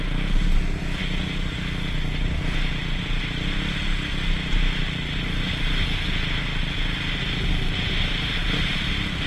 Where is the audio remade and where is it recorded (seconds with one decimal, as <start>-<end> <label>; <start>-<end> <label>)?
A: 0.0-8.4 recorded; 8.4-8.9 remade; 8.9-9.3 recorded